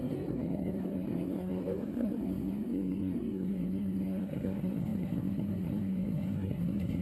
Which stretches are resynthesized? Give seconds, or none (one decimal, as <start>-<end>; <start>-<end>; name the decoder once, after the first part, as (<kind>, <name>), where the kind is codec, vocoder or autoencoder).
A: 0.0-7.0 (codec, SNAC)